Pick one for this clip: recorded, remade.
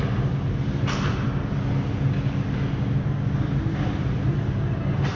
recorded